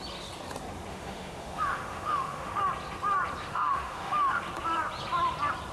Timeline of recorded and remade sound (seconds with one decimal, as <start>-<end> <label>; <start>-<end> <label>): 0.0-0.9 recorded; 0.9-2.6 remade; 2.6-3.4 recorded; 3.4-4.4 remade; 4.4-5.7 recorded